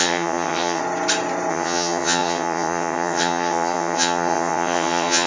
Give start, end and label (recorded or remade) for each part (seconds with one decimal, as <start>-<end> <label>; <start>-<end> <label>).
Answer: 0.0-0.8 remade; 0.8-1.5 recorded; 1.5-5.3 remade